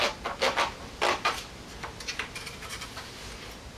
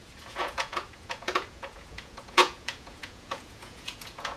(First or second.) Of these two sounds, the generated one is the second